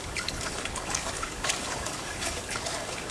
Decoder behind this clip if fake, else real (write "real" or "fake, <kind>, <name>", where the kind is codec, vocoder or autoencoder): fake, codec, DAC